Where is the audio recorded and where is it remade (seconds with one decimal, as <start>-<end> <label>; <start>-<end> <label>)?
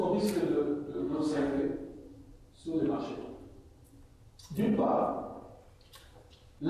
0.0-1.0 recorded; 1.0-1.6 remade; 1.6-6.7 recorded